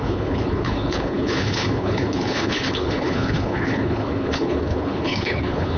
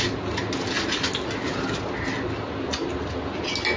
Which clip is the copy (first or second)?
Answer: first